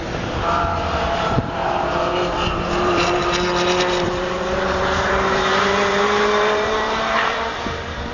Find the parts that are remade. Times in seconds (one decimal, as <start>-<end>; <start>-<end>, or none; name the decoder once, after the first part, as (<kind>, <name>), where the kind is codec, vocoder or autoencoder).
0.0-1.6 (vocoder, BigVGAN v2); 2.5-3.2; 3.8-8.1